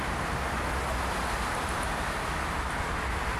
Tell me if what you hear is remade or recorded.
recorded